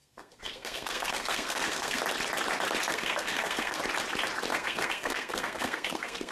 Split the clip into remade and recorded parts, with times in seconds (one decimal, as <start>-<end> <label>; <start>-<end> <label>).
0.0-2.0 remade; 2.0-2.9 recorded; 2.9-3.8 remade; 3.8-4.5 recorded; 4.5-6.3 remade